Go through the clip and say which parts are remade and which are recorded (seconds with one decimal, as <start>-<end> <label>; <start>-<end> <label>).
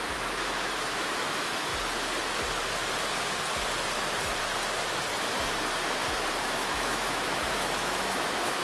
0.0-1.7 remade; 1.7-6.4 recorded; 6.4-8.6 remade